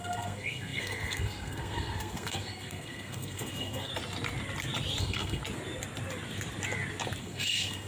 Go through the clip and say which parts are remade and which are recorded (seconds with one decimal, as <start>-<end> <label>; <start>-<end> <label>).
0.0-3.9 remade; 3.9-5.0 recorded; 5.0-5.4 remade; 5.4-7.2 recorded; 7.2-7.9 remade